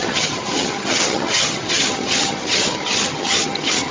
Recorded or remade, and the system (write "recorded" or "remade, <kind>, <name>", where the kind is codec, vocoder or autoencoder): remade, vocoder, HiFi-GAN